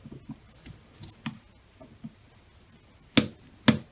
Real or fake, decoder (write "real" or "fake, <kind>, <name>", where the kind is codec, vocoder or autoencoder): real